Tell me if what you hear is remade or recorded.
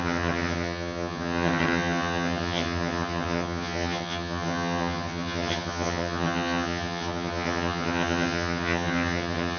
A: remade